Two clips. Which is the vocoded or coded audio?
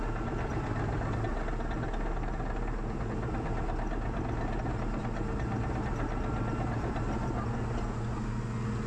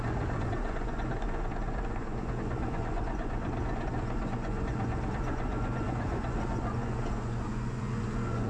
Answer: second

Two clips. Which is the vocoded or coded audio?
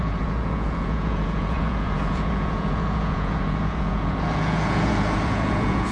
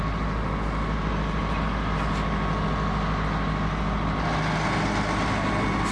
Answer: first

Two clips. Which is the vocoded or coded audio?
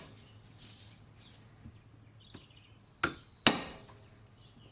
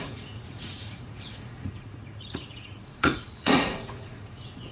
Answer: second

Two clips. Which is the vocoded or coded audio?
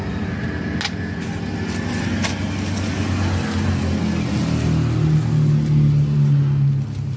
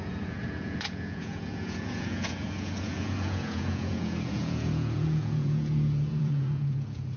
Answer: second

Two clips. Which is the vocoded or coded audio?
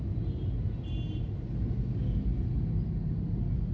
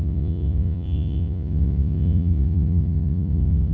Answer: second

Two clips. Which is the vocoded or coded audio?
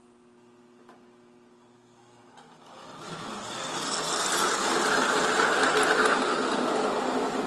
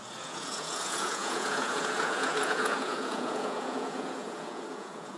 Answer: second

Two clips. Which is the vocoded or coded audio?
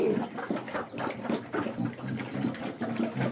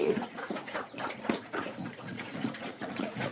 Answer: second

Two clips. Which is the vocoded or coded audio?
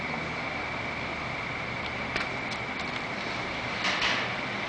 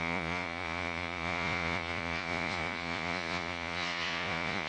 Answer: second